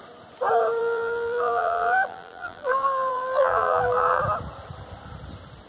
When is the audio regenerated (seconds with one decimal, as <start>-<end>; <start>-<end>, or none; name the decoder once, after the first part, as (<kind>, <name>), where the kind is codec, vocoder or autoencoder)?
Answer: 0.8-4.2 (vocoder, BigVGAN v2)